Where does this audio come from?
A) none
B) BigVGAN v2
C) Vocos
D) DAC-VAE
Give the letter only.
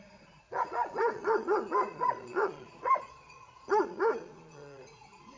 C